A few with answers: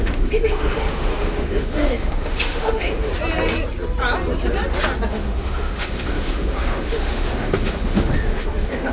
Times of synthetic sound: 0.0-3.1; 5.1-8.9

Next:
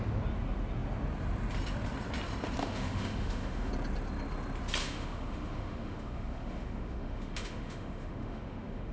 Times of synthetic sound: 2.6-3.7; 4.8-8.9

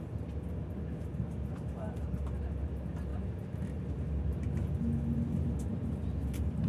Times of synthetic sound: none

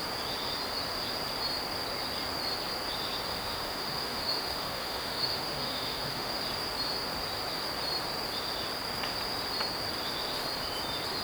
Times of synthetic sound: 3.3-6.4

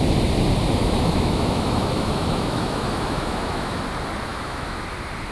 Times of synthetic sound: 0.8-3.8; 4.3-4.8

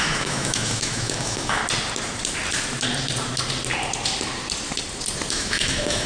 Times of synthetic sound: 0.0-1.6; 5.3-6.1